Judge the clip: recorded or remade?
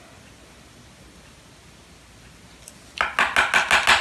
recorded